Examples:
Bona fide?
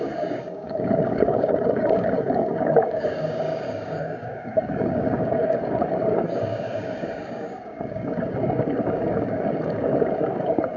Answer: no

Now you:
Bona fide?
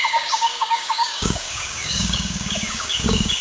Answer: no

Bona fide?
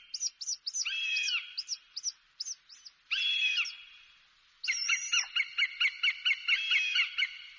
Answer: yes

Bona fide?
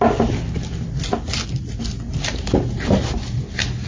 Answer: yes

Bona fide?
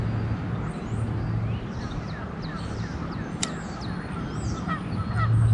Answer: yes